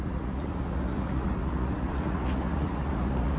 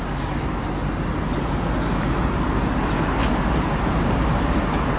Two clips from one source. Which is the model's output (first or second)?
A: first